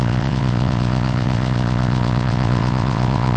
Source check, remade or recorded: remade